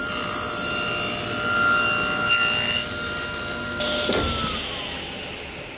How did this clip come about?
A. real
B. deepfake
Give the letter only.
A